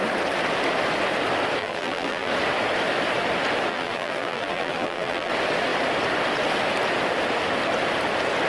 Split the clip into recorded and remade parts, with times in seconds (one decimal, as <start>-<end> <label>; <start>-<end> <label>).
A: 0.0-1.6 recorded; 1.6-2.3 remade; 2.3-3.7 recorded; 3.7-5.3 remade; 5.3-8.5 recorded